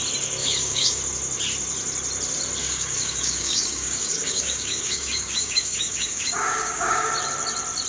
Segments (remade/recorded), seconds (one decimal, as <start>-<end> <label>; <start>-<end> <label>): 0.0-0.4 recorded; 0.4-1.0 remade; 1.0-2.6 recorded; 2.6-7.1 remade; 7.1-7.9 recorded